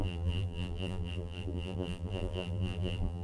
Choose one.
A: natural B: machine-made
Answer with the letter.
B